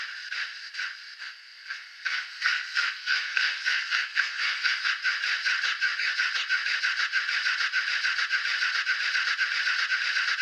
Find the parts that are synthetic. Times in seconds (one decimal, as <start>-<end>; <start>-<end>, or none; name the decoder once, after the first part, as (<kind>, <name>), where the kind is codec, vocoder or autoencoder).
1.2-4.9 (codec, SNAC)